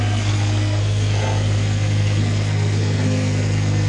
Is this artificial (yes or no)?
yes